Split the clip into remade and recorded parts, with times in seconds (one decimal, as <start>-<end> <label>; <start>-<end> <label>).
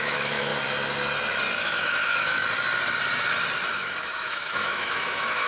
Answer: 0.0-0.5 remade; 0.5-1.6 recorded; 1.6-2.4 remade; 2.4-3.7 recorded; 3.7-5.5 remade